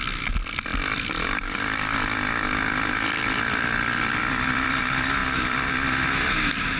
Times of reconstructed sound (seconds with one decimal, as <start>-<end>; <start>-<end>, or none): 0.7-4.8; 5.2-5.7